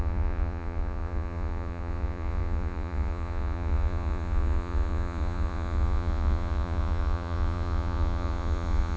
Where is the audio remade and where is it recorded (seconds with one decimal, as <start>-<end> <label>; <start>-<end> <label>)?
0.0-9.0 remade